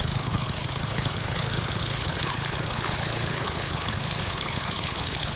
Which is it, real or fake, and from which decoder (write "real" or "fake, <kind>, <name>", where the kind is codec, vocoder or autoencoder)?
fake, codec, HILCodec